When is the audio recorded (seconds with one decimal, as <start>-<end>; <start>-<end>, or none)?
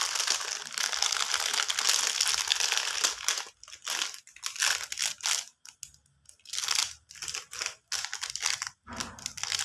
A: 0.0-9.6